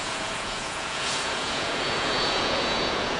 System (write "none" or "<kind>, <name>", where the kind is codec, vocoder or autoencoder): vocoder, Vocos